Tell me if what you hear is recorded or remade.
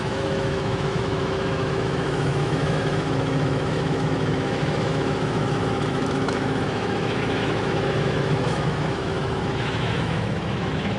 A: remade